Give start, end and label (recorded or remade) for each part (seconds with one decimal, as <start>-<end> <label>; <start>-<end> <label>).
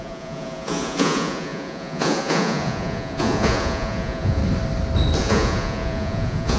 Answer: 0.0-4.4 remade; 4.4-5.2 recorded; 5.2-6.6 remade